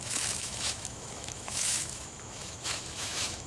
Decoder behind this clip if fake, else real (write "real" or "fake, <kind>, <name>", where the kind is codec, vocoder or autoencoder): fake, autoencoder, DAC-VAE